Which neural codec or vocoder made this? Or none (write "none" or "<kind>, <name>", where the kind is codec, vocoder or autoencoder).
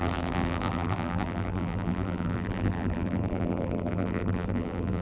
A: vocoder, BigVGAN v2